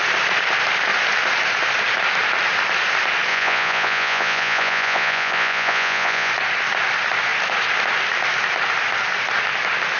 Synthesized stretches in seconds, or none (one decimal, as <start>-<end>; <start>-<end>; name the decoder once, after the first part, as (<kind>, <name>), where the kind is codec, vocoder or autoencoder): 3.3-6.3 (vocoder, Vocos)